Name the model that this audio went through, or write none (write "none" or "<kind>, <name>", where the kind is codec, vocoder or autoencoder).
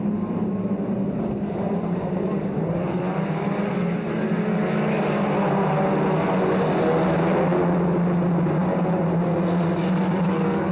none